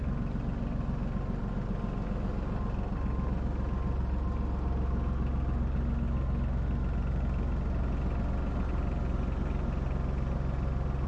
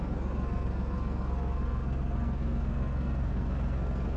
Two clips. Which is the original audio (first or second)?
first